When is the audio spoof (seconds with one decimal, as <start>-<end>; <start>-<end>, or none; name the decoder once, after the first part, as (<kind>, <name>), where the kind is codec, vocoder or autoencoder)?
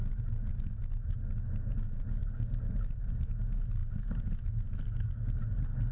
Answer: none